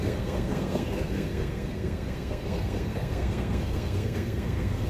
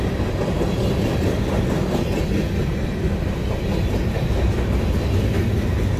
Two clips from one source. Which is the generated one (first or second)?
first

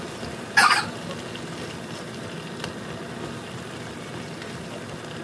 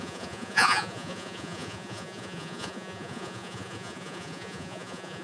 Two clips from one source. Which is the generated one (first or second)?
second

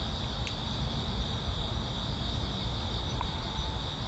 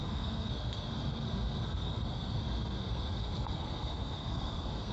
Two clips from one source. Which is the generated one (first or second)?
second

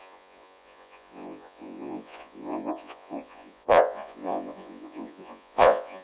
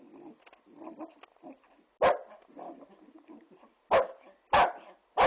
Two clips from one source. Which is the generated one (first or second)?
first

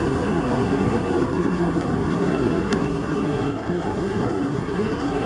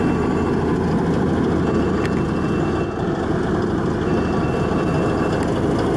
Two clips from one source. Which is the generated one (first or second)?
first